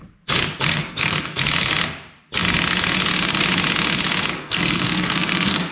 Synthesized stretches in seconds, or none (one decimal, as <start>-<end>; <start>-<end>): 0.7-1.4; 4.4-5.7